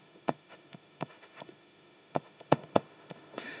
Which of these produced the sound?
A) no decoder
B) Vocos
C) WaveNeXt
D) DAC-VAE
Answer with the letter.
D